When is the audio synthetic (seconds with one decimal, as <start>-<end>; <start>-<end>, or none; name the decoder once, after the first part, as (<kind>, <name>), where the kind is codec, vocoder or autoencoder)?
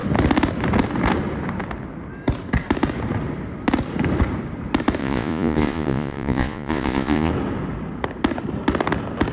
5.0-7.3 (vocoder, Vocos)